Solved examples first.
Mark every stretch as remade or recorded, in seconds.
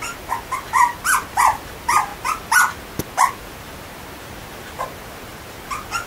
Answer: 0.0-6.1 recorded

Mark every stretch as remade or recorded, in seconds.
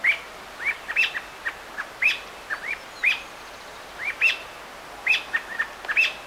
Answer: 0.0-3.7 recorded; 3.7-4.5 remade; 4.5-6.3 recorded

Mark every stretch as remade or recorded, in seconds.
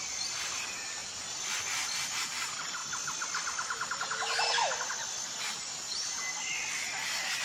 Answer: 0.0-7.4 recorded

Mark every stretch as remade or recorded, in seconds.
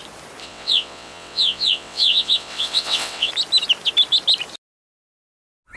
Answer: 0.0-0.4 recorded; 0.4-3.3 remade; 3.3-5.8 recorded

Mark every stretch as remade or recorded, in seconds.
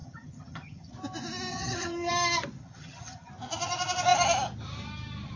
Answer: 0.0-0.9 remade; 0.9-1.5 recorded; 1.5-2.1 remade; 2.1-2.6 recorded; 2.6-3.3 remade; 3.3-5.4 recorded